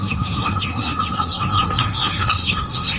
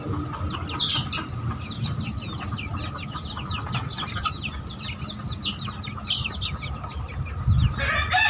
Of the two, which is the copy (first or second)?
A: first